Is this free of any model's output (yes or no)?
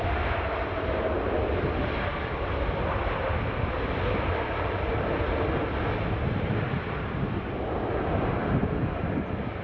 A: yes